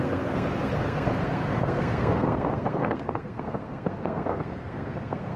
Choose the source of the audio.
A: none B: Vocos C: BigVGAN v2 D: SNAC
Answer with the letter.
D